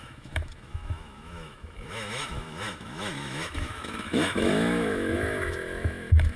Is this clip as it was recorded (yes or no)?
no